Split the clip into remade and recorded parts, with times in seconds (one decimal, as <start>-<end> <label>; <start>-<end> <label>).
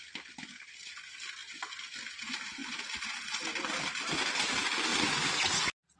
0.0-6.0 recorded